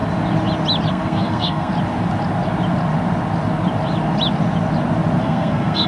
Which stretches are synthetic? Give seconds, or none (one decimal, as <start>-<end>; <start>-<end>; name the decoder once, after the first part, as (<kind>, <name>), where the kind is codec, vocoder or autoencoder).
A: 0.9-1.7 (codec, SNAC); 5.2-5.9